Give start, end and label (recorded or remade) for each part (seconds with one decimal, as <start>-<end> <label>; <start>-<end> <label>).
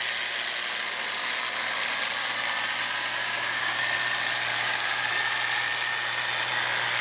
0.0-3.2 recorded; 3.2-3.8 remade; 3.8-4.5 recorded; 4.5-5.1 remade; 5.1-7.0 recorded